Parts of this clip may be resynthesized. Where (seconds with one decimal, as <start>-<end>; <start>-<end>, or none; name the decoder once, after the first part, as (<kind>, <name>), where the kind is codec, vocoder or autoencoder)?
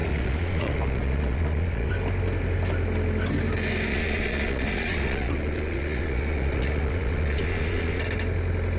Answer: 0.0-1.9 (vocoder, Vocos); 3.9-8.0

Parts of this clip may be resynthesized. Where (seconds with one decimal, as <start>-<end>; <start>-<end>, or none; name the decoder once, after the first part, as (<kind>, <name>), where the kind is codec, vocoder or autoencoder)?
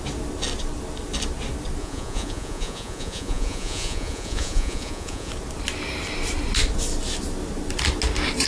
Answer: 1.8-5.3 (vocoder, Vocos)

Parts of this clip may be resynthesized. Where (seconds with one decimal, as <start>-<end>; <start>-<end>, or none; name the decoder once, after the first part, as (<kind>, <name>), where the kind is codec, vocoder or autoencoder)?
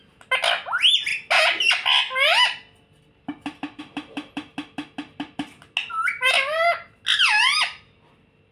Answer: none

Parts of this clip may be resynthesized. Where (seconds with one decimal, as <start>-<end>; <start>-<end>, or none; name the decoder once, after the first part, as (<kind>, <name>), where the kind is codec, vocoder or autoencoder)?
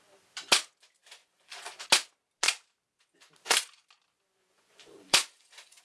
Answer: 1.2-1.8 (vocoder, Vocos); 4.4-5.8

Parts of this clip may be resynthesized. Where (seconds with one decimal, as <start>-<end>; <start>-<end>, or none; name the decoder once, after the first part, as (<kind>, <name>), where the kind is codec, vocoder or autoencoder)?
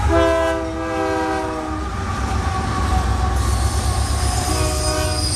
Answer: none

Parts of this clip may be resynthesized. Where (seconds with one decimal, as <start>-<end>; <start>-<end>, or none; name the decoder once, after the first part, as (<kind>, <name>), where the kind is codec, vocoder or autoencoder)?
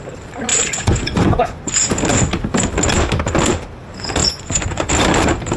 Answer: 0.5-1.7 (vocoder, Vocos); 4.2-4.9